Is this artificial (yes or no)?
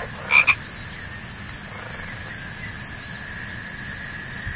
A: no